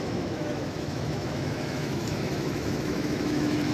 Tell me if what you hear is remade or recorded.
remade